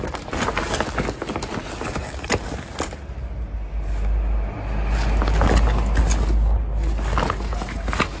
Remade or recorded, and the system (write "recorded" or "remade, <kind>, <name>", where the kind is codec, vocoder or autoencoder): recorded